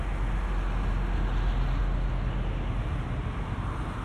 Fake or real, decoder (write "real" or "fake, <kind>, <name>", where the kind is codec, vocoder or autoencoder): real